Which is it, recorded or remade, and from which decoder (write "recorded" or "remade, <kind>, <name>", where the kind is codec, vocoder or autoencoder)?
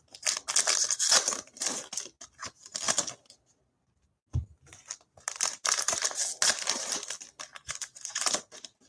recorded